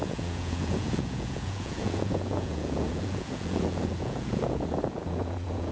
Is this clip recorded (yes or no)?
no